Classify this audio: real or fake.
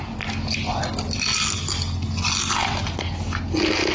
real